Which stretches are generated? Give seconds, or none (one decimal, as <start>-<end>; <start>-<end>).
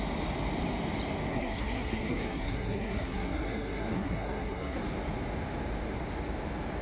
1.3-4.8